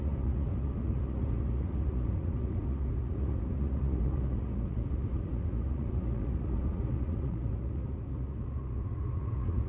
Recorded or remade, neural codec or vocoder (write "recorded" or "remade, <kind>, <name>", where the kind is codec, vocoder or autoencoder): remade, vocoder, Vocos